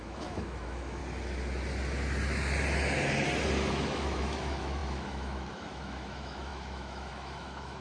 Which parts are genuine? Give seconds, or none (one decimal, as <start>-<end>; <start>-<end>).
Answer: 1.0-3.7

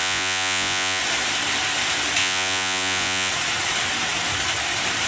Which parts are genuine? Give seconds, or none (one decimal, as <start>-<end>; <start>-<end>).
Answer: 1.0-2.2; 3.3-5.1

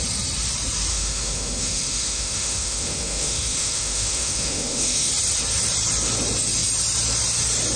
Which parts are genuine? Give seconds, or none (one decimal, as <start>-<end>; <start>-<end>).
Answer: 0.0-0.9; 5.1-7.8

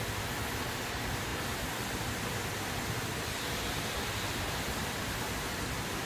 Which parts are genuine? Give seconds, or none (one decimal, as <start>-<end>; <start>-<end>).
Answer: 0.0-6.1

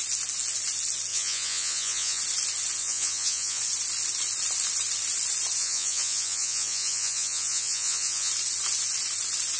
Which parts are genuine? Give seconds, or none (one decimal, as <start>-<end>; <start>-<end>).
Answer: 0.0-1.1; 2.2-2.8; 3.6-5.6; 8.3-9.6

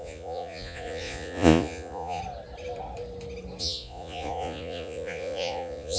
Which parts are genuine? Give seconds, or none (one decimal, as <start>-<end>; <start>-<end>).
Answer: 2.2-3.6

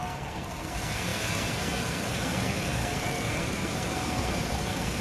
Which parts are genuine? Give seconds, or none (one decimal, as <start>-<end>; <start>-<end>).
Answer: none